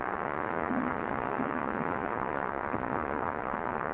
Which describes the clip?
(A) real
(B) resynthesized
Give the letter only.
B